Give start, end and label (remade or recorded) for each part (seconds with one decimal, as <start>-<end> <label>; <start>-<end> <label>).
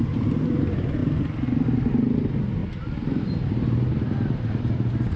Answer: 0.0-5.2 recorded